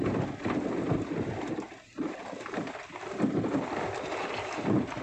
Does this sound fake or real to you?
real